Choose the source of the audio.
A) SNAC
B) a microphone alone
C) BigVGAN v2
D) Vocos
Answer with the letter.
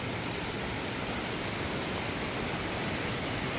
B